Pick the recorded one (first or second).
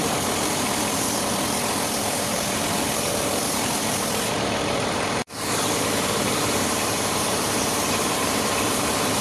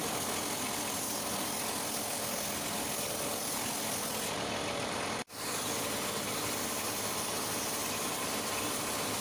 second